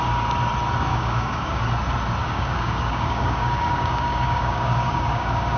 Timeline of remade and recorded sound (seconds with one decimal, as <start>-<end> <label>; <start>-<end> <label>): 0.0-0.9 recorded; 0.9-1.6 remade; 1.6-2.2 recorded; 2.2-5.6 remade